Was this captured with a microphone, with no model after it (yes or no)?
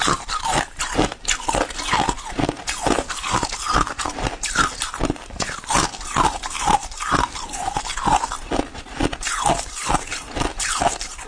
yes